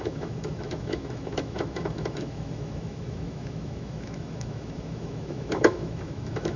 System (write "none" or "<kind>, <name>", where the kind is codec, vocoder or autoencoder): autoencoder, DAC-VAE